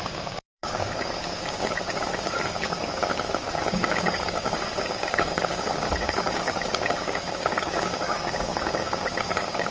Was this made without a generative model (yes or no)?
no